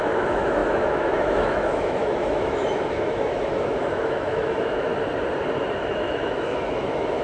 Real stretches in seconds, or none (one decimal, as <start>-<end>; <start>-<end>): 4.9-5.7